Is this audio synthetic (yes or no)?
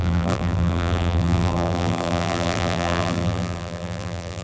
yes